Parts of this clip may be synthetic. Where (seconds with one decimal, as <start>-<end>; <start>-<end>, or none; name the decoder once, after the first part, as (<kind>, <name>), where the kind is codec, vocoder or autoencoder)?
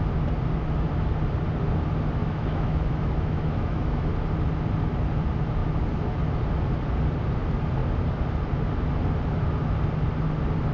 2.2-4.1 (autoencoder, DAC-VAE)